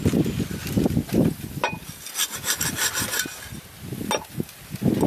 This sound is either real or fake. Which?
real